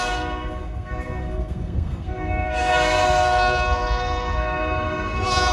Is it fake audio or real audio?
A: fake